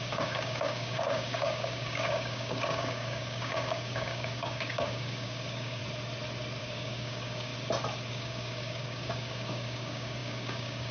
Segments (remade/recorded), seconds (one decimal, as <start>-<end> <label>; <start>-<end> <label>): 0.0-5.8 remade; 5.8-6.6 recorded; 6.6-7.5 remade; 7.5-8.1 recorded; 8.1-10.9 remade